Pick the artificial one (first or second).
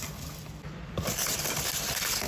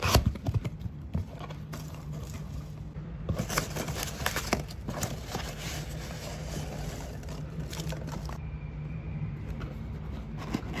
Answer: first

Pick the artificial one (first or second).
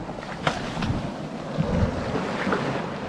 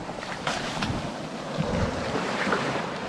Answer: second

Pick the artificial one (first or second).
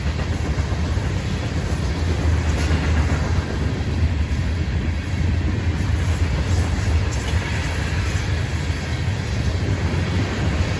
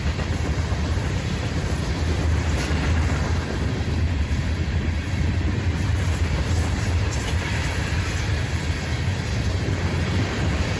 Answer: second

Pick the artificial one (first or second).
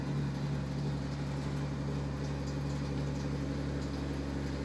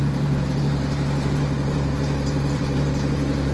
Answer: second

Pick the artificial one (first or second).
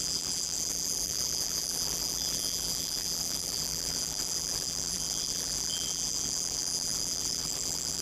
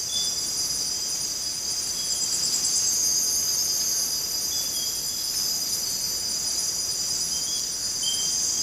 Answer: first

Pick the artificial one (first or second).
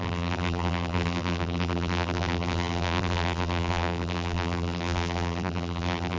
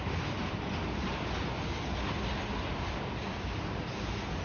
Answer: first